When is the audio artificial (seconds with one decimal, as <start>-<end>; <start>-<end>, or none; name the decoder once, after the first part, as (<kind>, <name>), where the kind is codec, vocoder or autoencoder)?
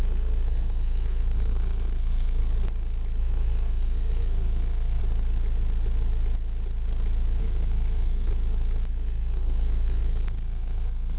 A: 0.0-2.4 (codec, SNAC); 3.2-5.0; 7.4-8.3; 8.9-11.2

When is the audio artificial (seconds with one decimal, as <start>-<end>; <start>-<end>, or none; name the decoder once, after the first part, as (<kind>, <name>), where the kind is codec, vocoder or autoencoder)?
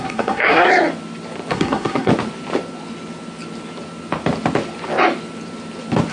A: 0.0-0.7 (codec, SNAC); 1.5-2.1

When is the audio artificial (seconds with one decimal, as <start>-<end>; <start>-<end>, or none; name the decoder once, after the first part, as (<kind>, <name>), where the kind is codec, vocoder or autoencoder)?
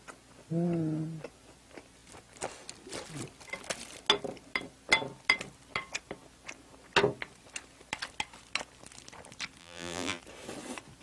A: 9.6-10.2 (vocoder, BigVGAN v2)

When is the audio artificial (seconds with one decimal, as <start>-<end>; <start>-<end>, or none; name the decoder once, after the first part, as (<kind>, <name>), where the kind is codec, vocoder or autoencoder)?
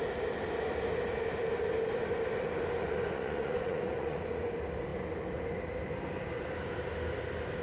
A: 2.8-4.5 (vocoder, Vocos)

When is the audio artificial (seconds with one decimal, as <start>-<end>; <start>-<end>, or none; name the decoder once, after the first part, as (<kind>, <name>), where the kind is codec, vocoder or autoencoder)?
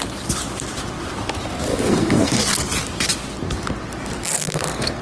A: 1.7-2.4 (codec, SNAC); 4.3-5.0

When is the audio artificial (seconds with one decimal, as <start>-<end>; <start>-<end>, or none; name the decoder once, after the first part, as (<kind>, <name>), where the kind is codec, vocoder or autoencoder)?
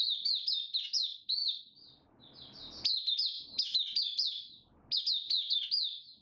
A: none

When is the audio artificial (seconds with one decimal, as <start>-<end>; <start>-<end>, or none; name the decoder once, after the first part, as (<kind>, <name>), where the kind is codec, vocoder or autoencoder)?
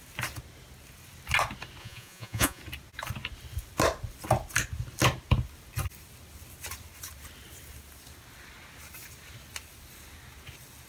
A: 1.8-2.6 (vocoder, Vocos)